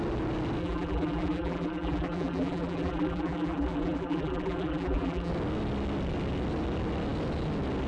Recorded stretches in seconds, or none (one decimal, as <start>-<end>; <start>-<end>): 0.0-0.6; 5.3-7.9